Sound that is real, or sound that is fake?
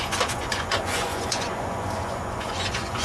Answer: fake